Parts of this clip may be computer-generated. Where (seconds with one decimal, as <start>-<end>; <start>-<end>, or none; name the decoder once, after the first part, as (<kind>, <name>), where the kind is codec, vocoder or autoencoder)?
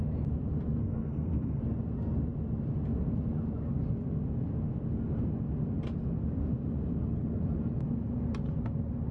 0.8-1.6 (codec, SNAC)